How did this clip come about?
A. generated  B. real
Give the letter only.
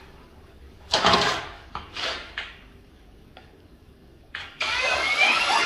A